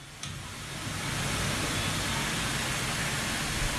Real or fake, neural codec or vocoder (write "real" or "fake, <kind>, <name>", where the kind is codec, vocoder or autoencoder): real